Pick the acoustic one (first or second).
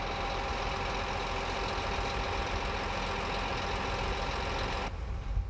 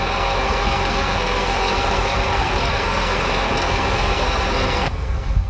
first